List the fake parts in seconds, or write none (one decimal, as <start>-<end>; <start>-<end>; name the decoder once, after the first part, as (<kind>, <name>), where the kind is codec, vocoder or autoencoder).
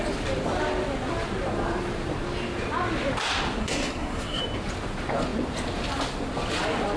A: 3.6-4.4 (codec, SNAC)